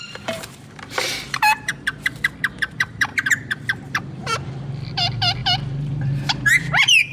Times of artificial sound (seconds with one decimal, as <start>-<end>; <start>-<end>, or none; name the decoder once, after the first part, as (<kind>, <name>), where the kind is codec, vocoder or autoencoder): 0.0-1.7 (vocoder, BigVGAN v2); 2.5-7.1